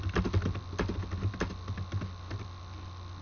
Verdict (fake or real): real